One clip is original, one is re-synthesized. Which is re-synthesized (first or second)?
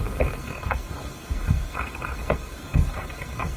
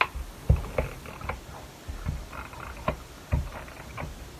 first